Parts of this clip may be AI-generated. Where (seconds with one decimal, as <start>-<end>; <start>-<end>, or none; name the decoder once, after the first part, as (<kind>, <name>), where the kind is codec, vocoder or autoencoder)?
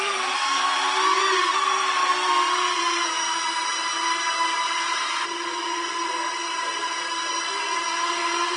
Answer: none